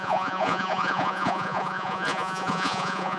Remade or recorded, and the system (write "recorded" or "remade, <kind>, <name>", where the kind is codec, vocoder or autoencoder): remade, vocoder, Vocos